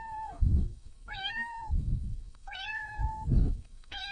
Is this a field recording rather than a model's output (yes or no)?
no